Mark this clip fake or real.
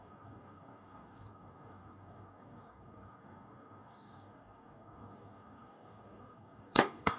fake